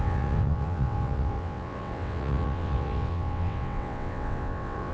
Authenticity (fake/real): fake